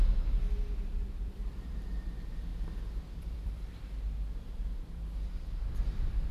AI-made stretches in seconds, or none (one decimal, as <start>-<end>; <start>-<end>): 0.9-1.5; 2.5-6.3

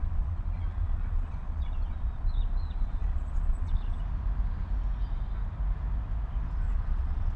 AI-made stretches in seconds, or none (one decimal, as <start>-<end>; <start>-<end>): 0.0-4.0; 6.7-7.4

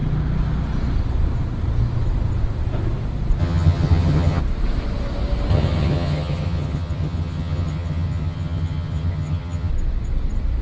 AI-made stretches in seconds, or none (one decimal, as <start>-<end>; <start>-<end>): 3.4-4.4; 5.5-9.7